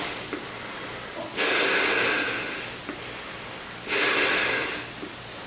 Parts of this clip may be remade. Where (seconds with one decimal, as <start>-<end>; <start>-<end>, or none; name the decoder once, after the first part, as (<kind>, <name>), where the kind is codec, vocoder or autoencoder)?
none